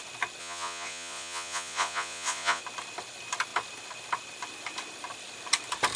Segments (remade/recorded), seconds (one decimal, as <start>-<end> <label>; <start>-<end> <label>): 0.0-0.4 recorded; 0.4-2.6 remade; 2.6-6.0 recorded